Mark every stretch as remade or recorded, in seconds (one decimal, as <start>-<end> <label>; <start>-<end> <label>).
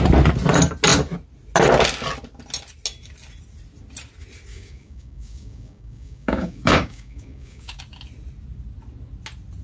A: 0.0-4.5 recorded; 4.5-7.8 remade; 7.8-9.6 recorded